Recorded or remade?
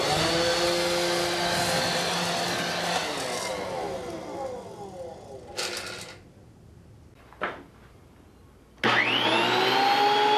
recorded